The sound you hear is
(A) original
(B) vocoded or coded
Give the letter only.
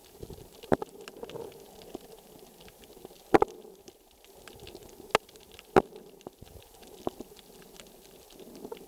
A